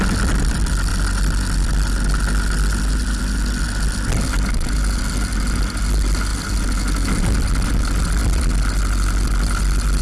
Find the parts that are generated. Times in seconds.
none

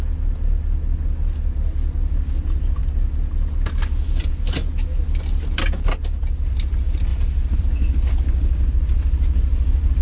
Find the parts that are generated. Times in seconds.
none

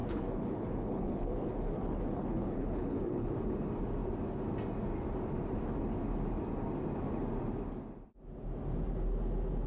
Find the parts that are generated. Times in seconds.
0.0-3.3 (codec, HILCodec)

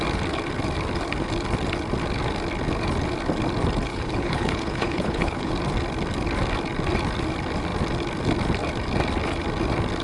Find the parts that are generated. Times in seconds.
3.9-5.5 (codec, HILCodec)